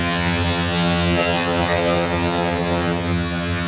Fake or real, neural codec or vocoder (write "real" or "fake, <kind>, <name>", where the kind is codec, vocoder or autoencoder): fake, vocoder, HiFi-GAN